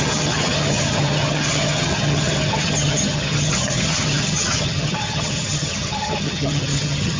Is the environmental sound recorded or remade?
remade